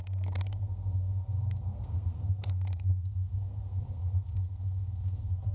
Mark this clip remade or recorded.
remade